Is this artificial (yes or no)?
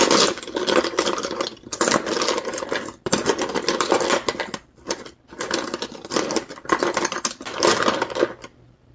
no